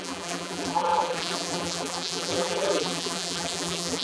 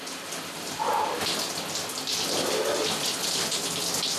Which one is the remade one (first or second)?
first